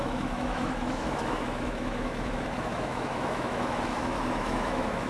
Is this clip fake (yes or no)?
yes